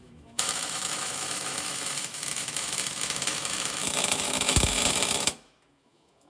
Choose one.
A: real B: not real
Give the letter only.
B